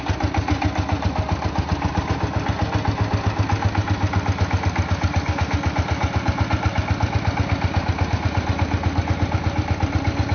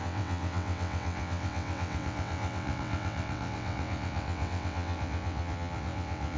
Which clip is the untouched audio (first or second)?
first